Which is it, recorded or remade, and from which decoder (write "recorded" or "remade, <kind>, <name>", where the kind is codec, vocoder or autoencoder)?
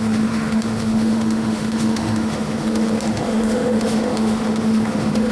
remade, autoencoder, DAC-VAE